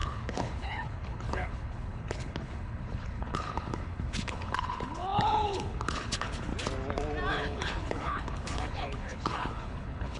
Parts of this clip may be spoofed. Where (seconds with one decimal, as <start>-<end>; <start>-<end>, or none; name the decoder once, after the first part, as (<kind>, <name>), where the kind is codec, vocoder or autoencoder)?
0.0-6.5 (codec, HILCodec); 7.3-10.2